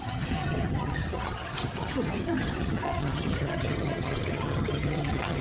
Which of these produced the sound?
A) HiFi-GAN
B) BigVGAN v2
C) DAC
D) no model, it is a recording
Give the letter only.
A